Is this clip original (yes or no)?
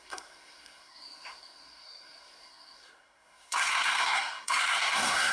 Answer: no